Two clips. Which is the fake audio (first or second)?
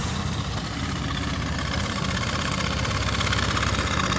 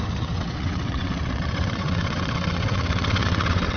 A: second